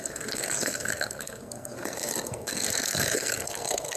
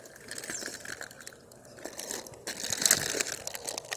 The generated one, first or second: first